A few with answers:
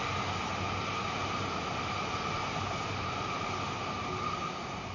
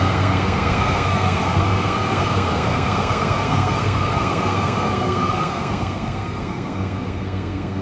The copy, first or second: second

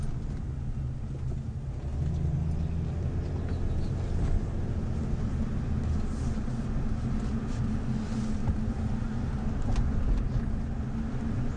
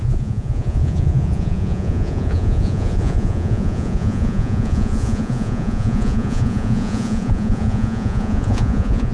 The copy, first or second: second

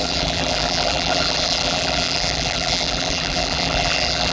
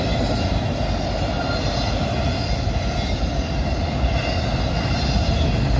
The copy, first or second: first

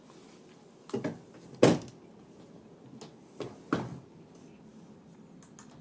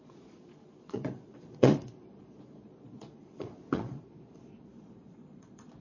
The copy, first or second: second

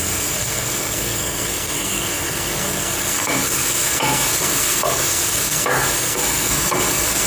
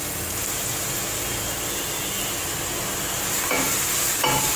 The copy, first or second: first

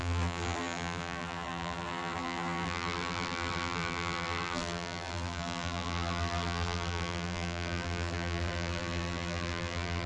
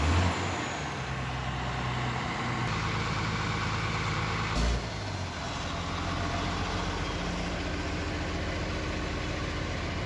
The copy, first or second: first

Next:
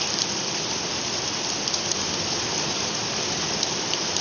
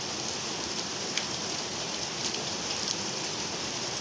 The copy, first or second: first